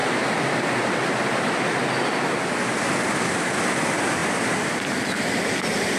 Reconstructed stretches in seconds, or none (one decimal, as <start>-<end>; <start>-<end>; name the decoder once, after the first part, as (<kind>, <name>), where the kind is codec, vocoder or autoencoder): 0.0-1.9 (vocoder, BigVGAN v2)